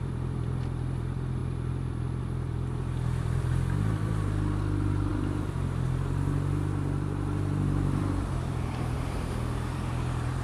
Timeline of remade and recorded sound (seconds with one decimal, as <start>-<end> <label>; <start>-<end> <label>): 0.0-1.4 remade; 1.4-2.2 recorded; 2.2-10.4 remade